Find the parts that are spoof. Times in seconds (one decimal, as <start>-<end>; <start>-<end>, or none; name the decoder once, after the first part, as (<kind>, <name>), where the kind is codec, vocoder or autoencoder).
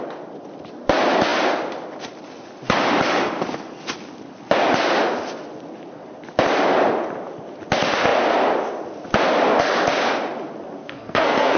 10.8-11.6 (codec, SNAC)